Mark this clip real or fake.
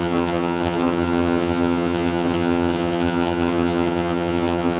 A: fake